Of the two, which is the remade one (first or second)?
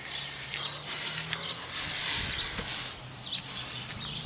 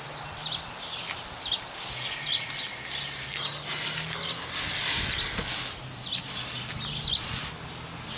first